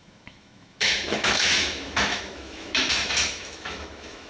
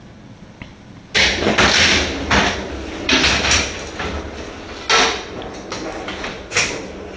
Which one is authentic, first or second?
second